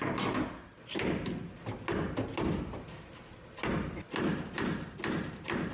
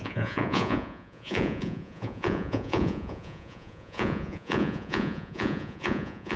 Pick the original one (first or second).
first